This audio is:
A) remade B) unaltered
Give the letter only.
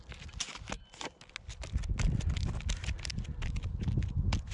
B